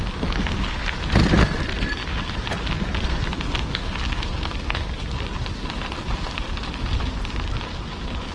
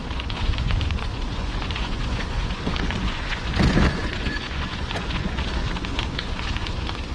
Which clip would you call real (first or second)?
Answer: first